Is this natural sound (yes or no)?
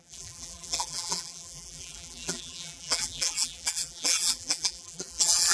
no